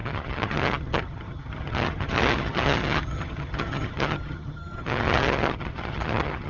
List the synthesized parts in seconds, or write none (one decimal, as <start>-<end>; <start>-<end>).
0.0-6.5